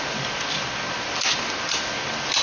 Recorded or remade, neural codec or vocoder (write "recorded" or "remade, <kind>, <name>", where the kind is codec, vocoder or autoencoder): recorded